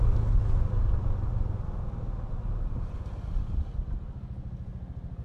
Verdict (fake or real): real